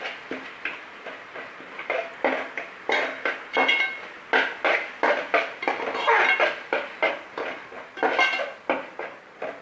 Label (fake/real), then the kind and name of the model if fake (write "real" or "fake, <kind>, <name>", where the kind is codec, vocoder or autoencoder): real